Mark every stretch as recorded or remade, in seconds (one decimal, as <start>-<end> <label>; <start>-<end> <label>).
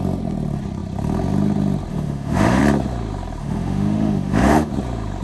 0.0-1.9 recorded; 1.9-2.6 remade; 2.6-3.4 recorded; 3.4-4.7 remade; 4.7-5.2 recorded